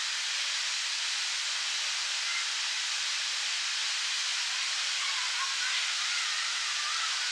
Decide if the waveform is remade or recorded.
recorded